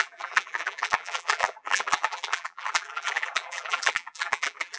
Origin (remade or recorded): remade